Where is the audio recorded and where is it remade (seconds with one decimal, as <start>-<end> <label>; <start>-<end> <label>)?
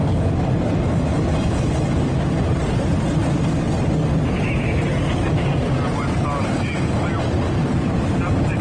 0.0-8.6 recorded